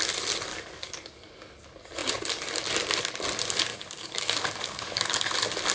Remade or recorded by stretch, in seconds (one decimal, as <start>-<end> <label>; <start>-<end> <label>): 0.0-0.5 recorded; 0.5-1.3 remade; 1.3-3.7 recorded; 3.7-5.3 remade; 5.3-5.7 recorded